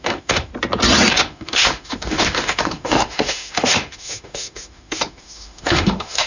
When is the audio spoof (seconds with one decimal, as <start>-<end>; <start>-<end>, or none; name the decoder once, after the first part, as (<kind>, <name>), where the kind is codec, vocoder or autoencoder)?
0.0-0.5 (autoencoder, DAC-VAE); 1.1-6.3